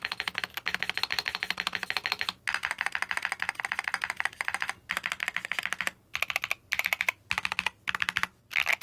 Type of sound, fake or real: real